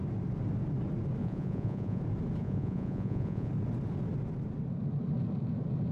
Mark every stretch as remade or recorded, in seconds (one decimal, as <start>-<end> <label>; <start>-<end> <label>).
0.0-1.2 recorded; 1.2-2.0 remade; 2.0-2.4 recorded; 2.4-3.5 remade; 3.5-5.9 recorded